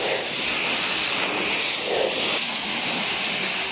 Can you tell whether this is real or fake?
real